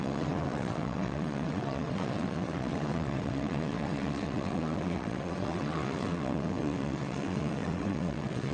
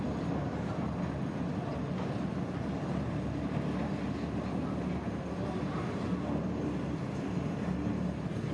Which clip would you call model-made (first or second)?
first